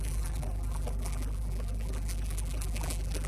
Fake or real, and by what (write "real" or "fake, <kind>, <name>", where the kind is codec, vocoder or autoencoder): fake, vocoder, BigVGAN v2